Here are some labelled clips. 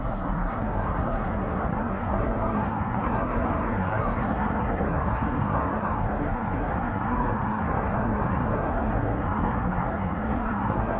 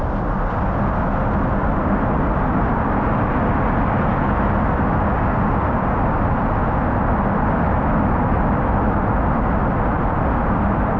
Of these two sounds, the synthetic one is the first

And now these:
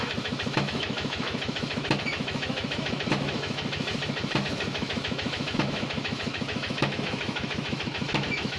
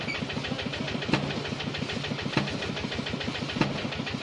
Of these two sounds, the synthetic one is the first